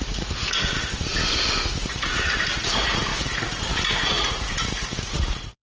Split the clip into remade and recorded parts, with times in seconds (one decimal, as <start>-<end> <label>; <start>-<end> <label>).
0.0-1.1 remade; 1.1-1.7 recorded; 1.7-5.6 remade